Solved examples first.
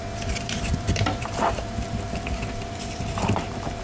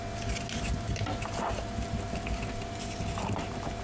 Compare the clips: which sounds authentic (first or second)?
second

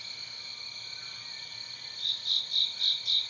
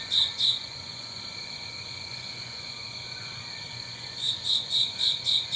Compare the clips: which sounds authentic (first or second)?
first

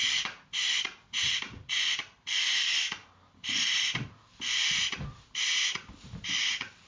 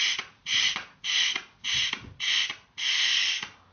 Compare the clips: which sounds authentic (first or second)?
second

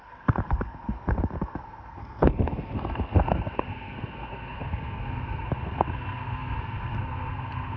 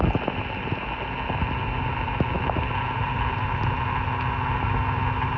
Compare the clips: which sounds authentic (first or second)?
second